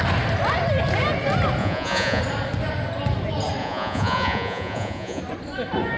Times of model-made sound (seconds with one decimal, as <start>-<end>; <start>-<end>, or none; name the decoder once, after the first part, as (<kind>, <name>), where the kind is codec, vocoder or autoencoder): 1.6-2.2 (vocoder, Vocos); 3.6-5.2